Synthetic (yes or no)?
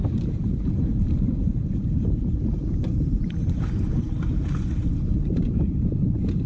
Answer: yes